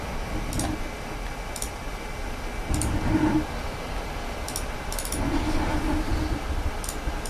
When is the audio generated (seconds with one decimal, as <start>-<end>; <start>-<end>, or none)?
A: none